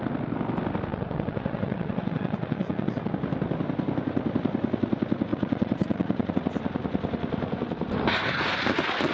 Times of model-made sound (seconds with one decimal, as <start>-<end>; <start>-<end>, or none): 0.9-3.1; 5.3-6.3

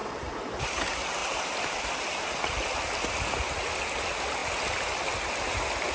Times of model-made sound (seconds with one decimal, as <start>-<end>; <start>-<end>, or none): none

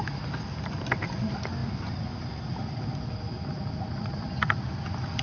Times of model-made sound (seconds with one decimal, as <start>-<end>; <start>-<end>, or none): none

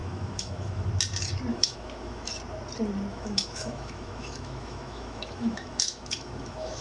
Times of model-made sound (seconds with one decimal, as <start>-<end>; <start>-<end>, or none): 0.0-0.9; 1.5-2.3; 3.1-6.8